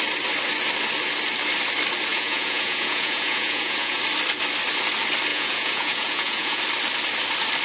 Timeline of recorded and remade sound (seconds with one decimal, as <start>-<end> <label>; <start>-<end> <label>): 0.0-2.1 recorded; 2.1-4.0 remade; 4.0-5.3 recorded; 5.3-6.6 remade; 6.6-7.6 recorded